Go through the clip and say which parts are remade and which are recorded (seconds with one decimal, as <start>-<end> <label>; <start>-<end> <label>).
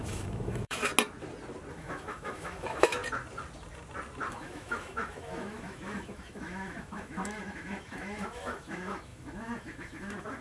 0.0-0.9 remade; 0.9-1.7 recorded; 1.7-3.0 remade; 3.0-4.3 recorded; 4.3-10.4 remade